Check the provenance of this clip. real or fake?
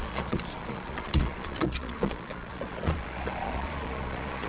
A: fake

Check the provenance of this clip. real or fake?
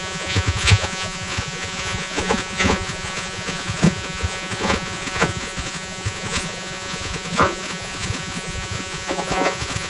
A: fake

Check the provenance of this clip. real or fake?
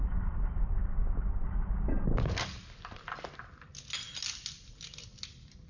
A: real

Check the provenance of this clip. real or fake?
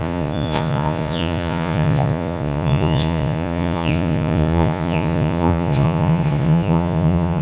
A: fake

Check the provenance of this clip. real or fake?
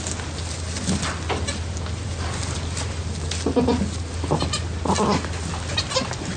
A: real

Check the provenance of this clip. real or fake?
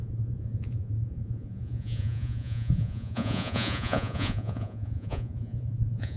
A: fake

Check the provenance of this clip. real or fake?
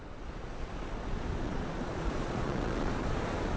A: fake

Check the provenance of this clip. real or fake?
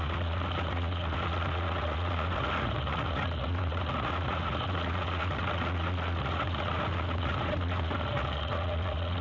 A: fake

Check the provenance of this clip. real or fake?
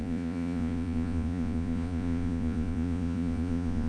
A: fake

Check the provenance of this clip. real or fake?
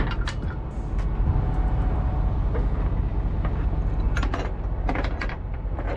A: real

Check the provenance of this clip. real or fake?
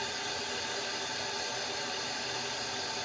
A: real